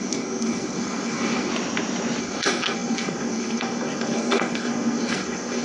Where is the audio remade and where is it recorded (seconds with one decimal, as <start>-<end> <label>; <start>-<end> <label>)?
0.0-1.5 remade; 1.5-2.2 recorded; 2.2-5.6 remade